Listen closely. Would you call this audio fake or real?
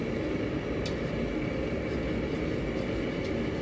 real